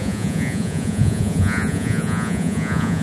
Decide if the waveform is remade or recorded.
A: remade